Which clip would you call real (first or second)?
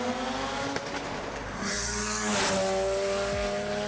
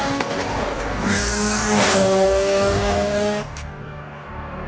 first